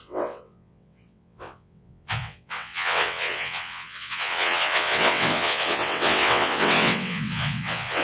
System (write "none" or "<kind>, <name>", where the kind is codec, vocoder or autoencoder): vocoder, WaveNeXt